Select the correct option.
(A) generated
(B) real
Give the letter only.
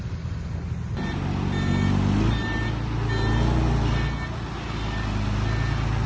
B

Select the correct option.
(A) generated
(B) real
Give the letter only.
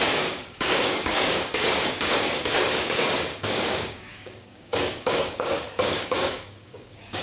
A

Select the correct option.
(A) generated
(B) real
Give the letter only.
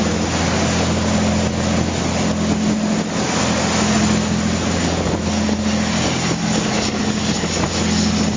B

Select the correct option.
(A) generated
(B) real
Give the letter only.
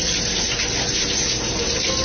B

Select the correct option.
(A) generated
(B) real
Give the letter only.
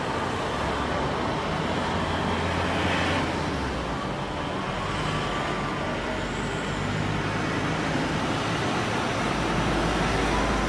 B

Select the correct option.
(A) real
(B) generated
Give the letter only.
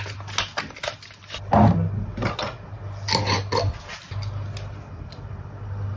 A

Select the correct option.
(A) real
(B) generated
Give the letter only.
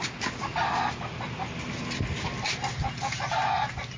A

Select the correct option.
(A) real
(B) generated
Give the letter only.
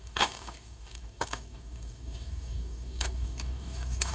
B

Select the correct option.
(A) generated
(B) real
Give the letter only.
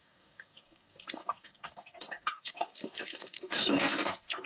A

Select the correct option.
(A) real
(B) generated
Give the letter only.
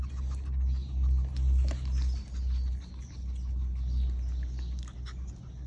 A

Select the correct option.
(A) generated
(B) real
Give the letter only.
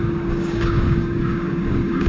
A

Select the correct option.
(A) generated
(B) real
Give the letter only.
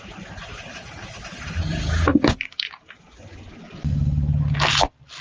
B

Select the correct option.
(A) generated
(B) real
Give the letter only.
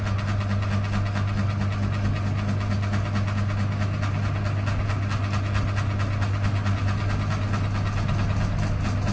B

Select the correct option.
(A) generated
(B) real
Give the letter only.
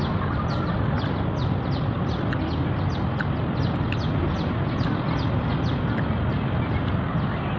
B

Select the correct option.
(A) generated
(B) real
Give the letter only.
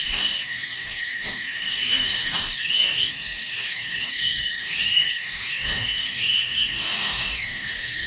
A